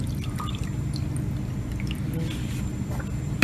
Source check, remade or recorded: recorded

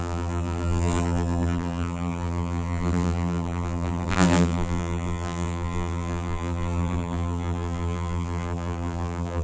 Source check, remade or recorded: remade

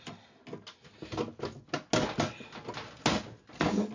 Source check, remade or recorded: recorded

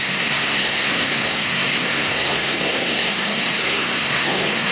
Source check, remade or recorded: remade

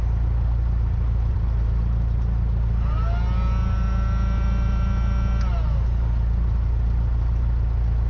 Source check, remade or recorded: recorded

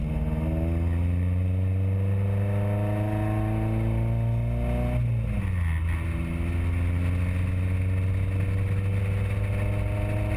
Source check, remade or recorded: recorded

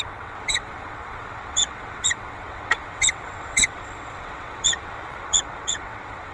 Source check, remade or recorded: remade